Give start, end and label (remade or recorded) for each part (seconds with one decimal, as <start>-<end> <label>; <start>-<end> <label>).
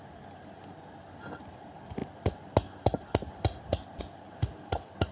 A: 0.0-5.1 recorded